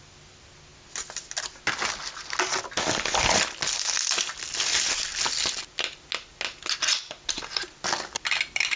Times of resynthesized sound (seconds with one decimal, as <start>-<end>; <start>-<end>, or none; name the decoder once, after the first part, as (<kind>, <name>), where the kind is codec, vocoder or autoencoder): none